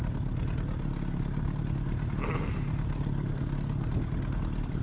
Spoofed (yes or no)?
no